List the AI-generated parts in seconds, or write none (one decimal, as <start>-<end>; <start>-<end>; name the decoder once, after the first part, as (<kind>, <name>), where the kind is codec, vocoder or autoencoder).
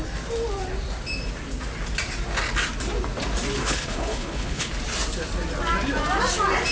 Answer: 3.6-4.7 (codec, HILCodec)